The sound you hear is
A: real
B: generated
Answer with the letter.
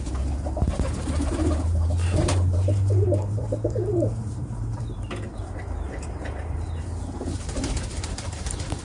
B